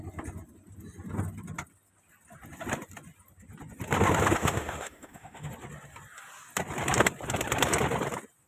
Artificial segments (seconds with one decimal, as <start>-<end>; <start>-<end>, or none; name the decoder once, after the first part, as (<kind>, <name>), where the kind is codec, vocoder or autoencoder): 4.4-5.5 (autoencoder, DAC-VAE)